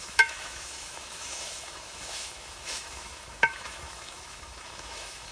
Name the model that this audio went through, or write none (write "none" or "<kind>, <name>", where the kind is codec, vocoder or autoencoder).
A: autoencoder, DAC-VAE